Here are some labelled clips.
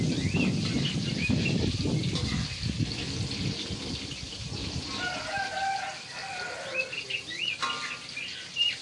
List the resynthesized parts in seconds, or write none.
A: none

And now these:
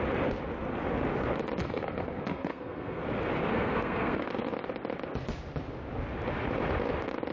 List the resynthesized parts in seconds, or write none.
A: 1.6-3.0; 3.5-4.3

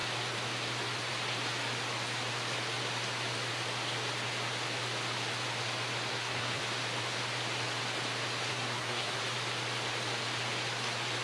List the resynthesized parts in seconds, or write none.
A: 6.1-6.6; 8.5-9.2

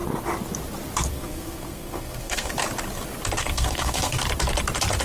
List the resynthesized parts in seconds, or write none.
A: 1.1-2.5; 3.4-4.2

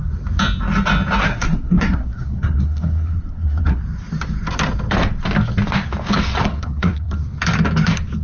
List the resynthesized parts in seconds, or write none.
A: 1.3-3.8; 6.4-7.1

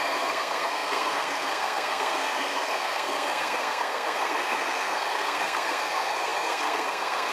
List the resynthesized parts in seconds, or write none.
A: 0.0-7.3

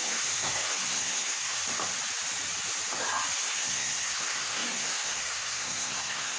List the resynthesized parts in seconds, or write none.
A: 0.0-1.6; 3.4-6.4